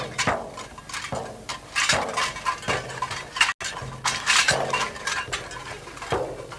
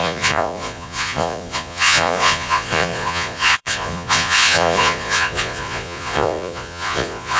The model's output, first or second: second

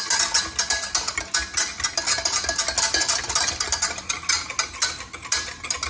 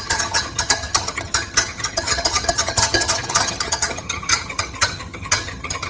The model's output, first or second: second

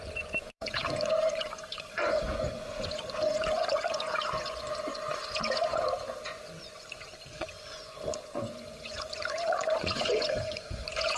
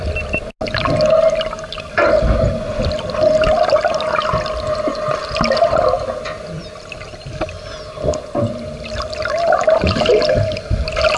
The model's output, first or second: first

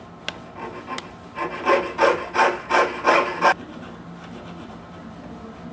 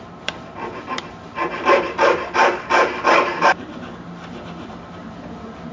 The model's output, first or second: second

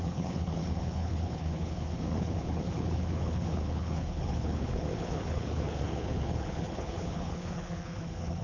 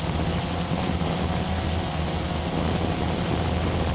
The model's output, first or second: first